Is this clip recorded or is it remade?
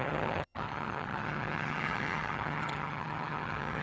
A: remade